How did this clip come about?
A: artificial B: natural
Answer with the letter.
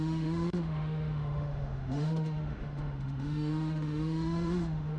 A